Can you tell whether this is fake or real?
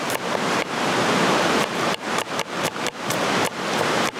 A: fake